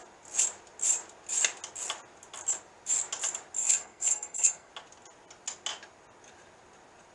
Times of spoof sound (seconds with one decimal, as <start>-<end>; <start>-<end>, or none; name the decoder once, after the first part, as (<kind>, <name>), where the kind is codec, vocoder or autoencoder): 3.6-4.7 (codec, SNAC)